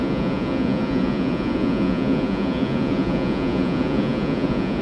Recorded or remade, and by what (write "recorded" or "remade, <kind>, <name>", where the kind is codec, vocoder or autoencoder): remade, vocoder, Vocos